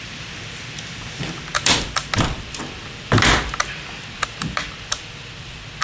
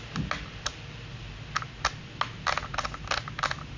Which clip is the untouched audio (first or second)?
second